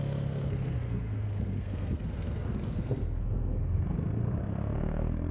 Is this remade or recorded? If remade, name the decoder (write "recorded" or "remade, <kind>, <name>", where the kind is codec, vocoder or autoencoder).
remade, codec, SNAC